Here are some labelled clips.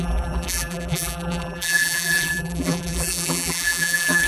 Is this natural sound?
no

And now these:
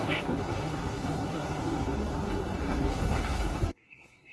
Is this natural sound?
no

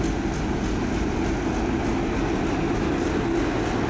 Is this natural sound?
yes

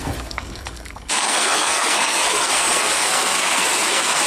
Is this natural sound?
no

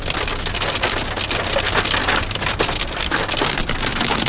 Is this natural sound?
yes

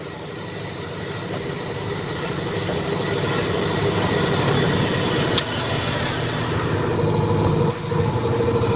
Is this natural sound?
yes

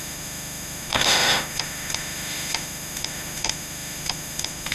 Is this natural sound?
no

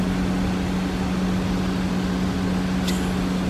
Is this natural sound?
yes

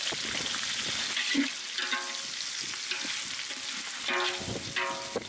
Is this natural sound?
yes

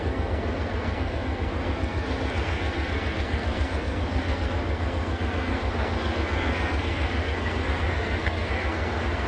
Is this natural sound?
no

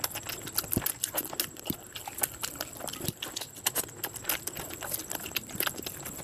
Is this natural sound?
yes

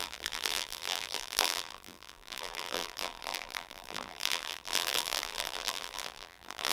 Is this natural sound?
no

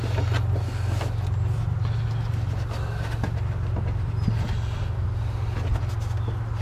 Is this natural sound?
yes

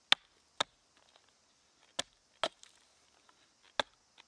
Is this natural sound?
yes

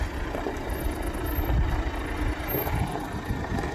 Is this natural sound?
yes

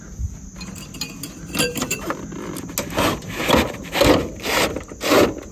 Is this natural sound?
yes